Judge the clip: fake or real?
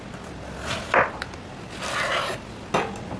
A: real